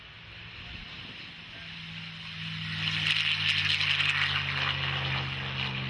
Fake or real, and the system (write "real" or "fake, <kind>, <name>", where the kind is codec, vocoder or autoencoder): real